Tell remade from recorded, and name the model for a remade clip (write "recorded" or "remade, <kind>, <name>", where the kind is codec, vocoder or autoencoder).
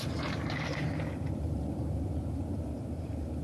remade, vocoder, BigVGAN v2